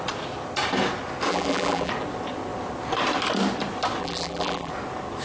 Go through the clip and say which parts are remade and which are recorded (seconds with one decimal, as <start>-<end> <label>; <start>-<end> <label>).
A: 0.0-1.3 recorded; 1.3-1.9 remade; 1.9-4.0 recorded; 4.0-4.7 remade; 4.7-5.2 recorded